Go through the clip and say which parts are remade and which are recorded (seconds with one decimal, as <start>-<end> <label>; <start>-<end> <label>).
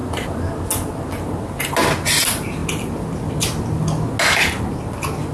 0.0-5.3 recorded